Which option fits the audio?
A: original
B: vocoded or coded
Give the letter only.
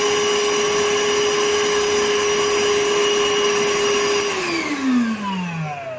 A